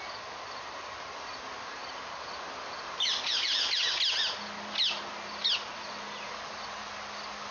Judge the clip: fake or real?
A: real